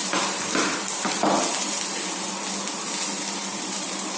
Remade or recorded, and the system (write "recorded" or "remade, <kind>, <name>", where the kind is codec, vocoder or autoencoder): recorded